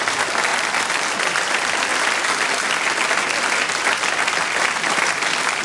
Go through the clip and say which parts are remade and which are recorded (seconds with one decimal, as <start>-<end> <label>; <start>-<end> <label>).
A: 0.0-5.6 recorded